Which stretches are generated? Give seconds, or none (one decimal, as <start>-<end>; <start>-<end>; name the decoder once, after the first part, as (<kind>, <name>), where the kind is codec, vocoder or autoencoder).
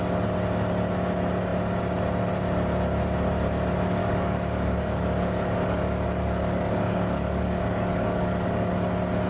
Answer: 4.0-8.7 (codec, DAC)